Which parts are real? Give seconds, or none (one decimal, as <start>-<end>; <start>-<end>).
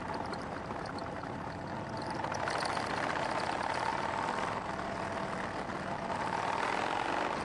0.0-7.4